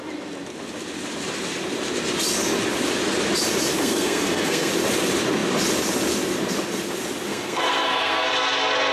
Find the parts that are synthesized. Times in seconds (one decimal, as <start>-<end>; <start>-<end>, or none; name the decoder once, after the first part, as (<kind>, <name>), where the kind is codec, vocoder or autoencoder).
3.8-4.7 (codec, SNAC); 7.3-8.3